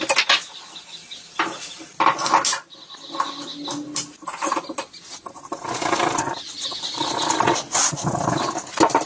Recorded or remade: recorded